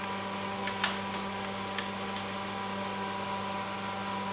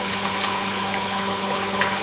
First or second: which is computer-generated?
second